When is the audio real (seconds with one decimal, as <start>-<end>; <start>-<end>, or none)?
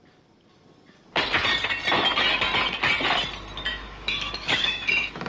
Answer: 0.0-3.7